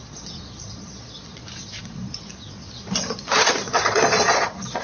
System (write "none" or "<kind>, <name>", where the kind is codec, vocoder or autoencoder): vocoder, Vocos